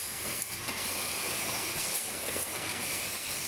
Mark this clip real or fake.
fake